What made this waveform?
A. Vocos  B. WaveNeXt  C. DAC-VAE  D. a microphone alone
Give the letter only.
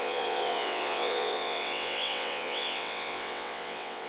B